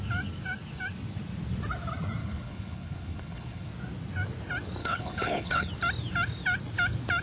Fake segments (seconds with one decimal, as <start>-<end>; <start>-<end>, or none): 2.2-3.7; 4.8-5.7

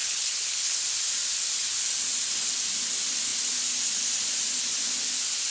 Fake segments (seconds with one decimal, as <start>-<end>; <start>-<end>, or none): 0.0-0.8

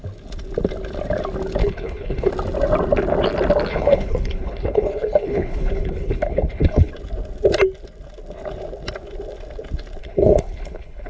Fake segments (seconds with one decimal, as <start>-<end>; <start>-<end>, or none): 1.6-2.3; 3.7-6.9; 10.0-11.1

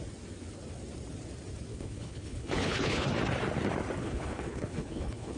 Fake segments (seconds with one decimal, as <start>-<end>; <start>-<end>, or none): 1.7-3.1; 4.0-5.4

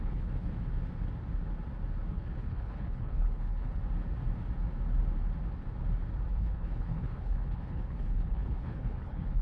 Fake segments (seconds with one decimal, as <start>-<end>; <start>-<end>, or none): 0.0-0.5; 2.1-3.8; 6.3-9.4

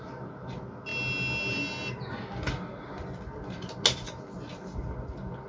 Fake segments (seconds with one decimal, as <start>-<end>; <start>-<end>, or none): none

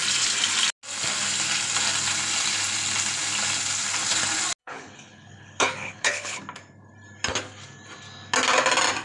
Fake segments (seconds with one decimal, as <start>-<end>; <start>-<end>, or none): 4.6-6.4

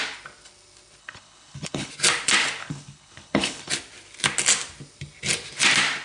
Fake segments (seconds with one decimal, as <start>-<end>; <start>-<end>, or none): 1.0-1.9; 2.6-3.7